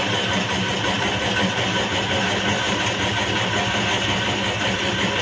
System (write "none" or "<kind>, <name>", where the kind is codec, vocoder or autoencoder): none